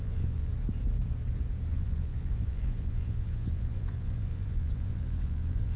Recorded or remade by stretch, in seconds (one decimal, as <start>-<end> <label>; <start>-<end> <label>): 0.0-0.5 remade; 0.5-1.7 recorded; 1.7-5.8 remade